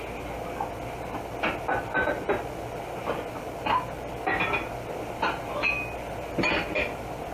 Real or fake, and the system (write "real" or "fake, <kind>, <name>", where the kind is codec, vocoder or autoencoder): real